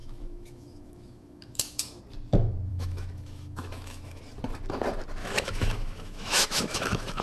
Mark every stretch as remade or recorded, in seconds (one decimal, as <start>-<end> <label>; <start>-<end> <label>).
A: 0.0-2.0 remade; 2.0-2.7 recorded; 2.7-4.2 remade; 4.2-5.2 recorded; 5.2-7.2 remade